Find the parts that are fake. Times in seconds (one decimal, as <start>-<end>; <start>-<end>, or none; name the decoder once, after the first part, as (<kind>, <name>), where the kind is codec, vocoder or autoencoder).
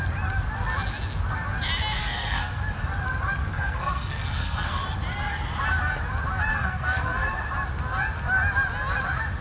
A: 2.0-2.6 (codec, SNAC); 3.4-4.8; 6.5-7.3